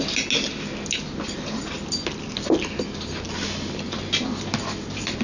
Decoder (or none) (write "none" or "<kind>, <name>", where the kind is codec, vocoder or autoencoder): none